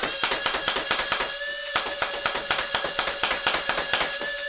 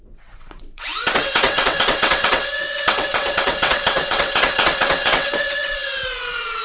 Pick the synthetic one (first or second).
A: second